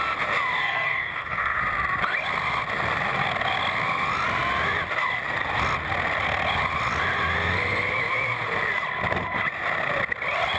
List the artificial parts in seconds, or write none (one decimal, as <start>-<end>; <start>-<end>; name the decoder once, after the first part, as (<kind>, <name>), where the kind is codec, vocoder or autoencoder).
0.6-1.6 (codec, SNAC)